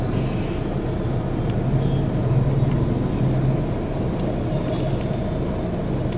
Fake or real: real